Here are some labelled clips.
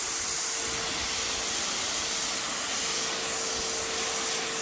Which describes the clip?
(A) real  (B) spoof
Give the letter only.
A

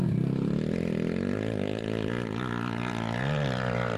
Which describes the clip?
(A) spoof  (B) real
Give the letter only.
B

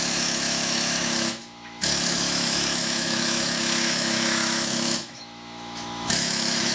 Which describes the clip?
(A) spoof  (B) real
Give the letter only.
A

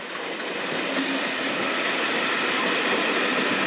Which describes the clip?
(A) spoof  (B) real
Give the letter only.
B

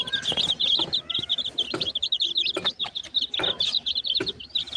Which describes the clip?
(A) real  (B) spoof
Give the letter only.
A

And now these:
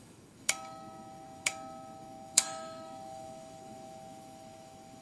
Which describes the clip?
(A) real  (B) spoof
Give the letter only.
B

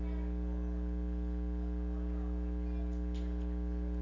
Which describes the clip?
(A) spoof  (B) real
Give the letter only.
B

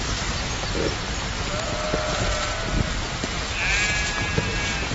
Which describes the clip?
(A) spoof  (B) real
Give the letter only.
B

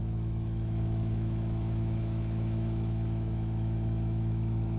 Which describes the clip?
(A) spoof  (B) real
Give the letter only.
A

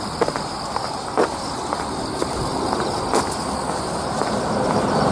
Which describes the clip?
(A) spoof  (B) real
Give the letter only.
B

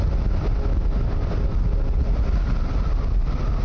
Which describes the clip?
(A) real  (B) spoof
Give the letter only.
A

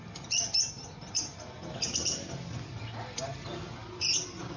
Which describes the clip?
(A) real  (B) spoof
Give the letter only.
A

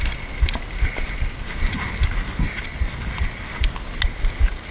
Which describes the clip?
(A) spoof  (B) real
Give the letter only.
B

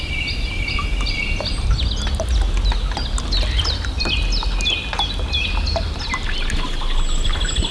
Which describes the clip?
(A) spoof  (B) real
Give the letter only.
B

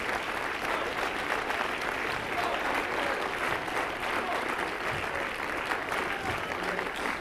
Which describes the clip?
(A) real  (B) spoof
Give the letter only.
A